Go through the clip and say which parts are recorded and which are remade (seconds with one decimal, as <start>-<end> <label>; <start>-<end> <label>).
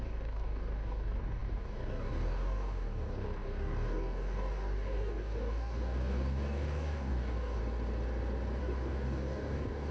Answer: 0.0-7.6 remade; 7.6-8.6 recorded; 8.6-9.9 remade